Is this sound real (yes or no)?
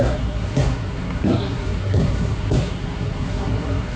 no